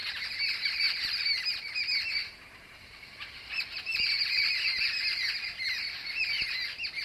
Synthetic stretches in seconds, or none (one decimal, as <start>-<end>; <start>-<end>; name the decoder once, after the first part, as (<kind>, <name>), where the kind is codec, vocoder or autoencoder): 0.0-1.2 (vocoder, BigVGAN v2); 2.2-4.6